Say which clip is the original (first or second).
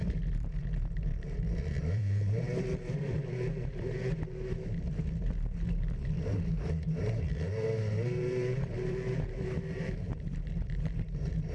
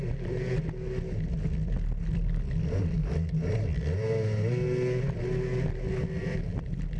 second